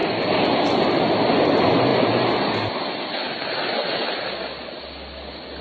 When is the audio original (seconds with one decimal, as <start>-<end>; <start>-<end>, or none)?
0.0-5.6